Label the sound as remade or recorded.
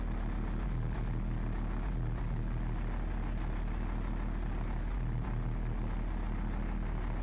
recorded